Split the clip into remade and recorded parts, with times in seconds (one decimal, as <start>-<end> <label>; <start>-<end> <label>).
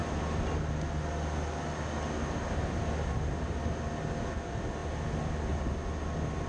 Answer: 0.0-6.5 recorded